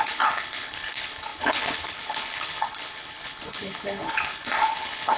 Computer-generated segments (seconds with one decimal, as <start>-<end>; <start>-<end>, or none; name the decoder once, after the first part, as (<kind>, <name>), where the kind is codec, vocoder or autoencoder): 0.0-5.2 (codec, HILCodec)